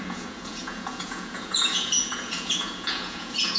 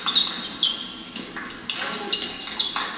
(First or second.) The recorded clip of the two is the second